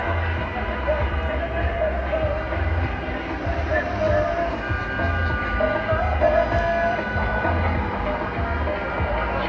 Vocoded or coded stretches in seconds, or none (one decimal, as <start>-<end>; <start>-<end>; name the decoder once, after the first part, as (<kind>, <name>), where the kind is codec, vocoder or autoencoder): none